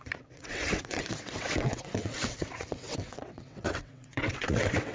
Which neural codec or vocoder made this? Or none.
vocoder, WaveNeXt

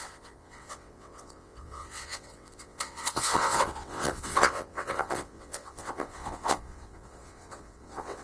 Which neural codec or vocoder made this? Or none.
vocoder, WaveNeXt